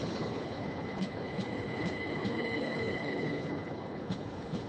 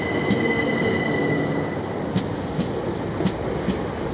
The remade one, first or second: first